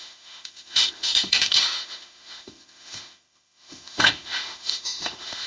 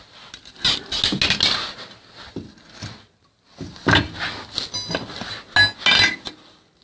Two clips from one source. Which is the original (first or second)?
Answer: second